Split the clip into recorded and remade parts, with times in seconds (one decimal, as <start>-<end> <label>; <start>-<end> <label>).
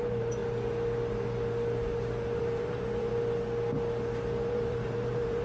0.0-0.4 remade; 0.4-2.4 recorded; 2.4-3.1 remade; 3.1-4.5 recorded; 4.5-5.4 remade